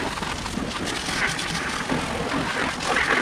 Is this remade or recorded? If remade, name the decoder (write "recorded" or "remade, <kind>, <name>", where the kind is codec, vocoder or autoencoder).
recorded